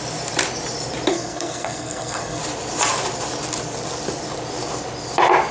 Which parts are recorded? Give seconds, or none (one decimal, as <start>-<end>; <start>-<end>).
0.0-1.1; 2.4-5.5